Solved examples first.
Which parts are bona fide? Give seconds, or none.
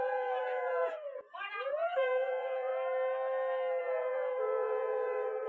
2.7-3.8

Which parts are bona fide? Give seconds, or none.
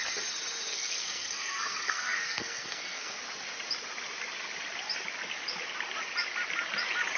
0.0-0.7; 3.2-7.2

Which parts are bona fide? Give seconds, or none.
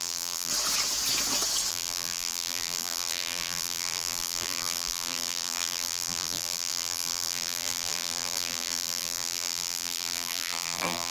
0.5-1.7